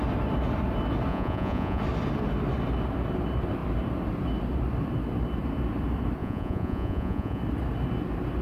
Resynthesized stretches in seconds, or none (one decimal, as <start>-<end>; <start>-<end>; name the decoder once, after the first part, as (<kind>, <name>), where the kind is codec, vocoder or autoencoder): 1.1-1.8 (vocoder, Vocos); 6.2-7.4